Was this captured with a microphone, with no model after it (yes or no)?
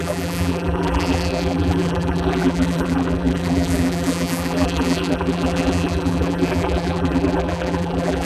no